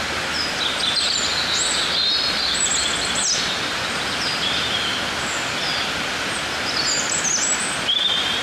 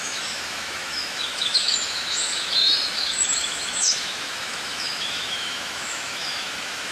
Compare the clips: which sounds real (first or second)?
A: first